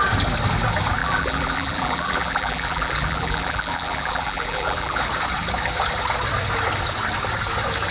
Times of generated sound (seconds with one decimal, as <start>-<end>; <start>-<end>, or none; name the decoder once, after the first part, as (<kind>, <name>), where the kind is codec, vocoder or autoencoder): 1.0-5.0 (vocoder, BigVGAN v2)